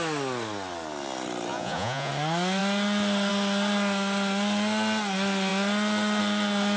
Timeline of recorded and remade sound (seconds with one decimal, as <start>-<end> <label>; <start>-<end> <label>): 0.0-1.5 recorded; 1.5-2.1 remade; 2.1-6.8 recorded